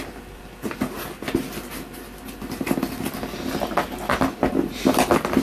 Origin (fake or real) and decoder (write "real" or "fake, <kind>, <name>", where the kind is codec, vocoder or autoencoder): real